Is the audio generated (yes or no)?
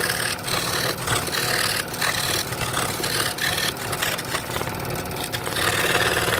no